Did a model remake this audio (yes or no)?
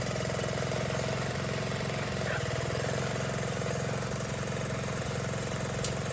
yes